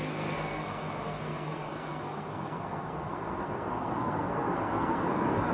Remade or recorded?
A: remade